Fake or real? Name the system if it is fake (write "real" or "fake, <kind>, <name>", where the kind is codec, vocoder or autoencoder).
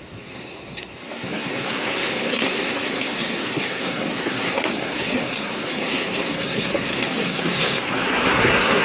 fake, codec, SNAC